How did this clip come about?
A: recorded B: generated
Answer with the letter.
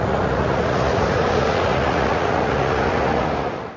B